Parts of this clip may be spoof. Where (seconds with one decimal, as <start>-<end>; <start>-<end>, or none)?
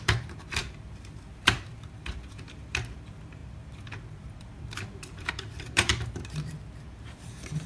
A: 0.0-5.9; 6.8-7.7